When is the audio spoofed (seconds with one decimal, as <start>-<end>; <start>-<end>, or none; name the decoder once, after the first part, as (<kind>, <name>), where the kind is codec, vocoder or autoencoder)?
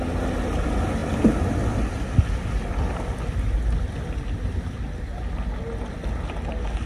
none